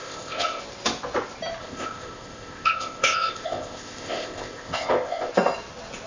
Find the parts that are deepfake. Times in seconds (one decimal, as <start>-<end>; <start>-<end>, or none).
0.0-0.6; 1.6-5.3